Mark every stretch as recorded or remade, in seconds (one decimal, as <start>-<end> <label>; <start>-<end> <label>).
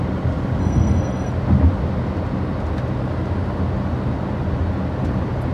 0.0-0.6 recorded; 0.6-1.3 remade; 1.3-5.5 recorded